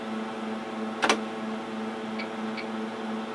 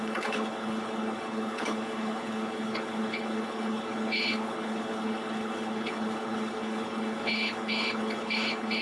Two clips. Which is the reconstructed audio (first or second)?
second